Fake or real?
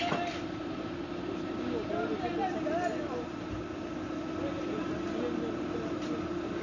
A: real